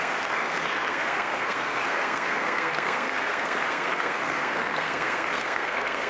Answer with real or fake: fake